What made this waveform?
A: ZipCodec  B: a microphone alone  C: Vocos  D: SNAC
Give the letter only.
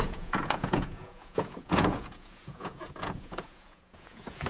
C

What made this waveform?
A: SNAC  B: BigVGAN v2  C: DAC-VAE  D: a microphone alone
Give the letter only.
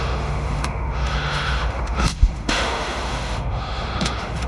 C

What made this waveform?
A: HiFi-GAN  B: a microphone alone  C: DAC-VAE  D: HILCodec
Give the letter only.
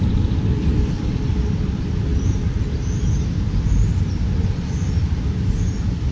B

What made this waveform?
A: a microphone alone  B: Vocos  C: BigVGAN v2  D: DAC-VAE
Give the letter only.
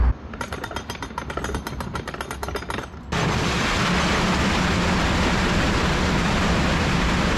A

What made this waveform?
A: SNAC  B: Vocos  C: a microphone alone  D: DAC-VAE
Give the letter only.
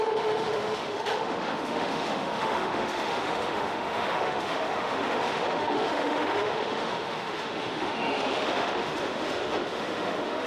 D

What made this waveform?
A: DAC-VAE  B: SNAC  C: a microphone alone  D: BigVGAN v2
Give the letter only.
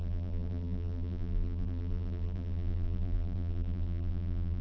D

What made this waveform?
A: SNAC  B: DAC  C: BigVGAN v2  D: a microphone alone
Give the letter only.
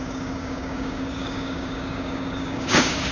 B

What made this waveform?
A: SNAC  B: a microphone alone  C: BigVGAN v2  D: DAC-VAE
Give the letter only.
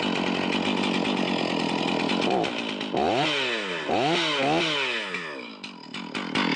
B